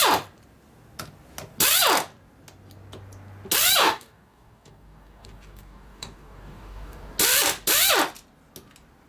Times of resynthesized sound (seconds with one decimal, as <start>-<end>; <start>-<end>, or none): 3.8-7.1